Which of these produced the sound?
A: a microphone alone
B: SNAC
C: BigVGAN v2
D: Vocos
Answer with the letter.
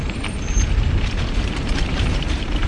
C